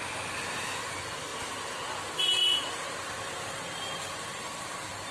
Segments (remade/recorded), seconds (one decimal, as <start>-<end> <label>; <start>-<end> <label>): 0.0-5.1 recorded